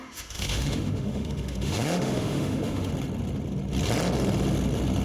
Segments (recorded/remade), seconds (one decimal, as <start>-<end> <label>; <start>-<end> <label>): 0.0-2.9 remade; 2.9-5.0 recorded